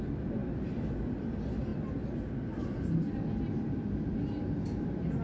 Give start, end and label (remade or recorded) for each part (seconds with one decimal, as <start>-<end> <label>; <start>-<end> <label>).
0.0-5.2 recorded